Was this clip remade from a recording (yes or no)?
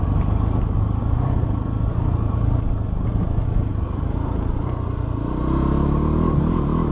no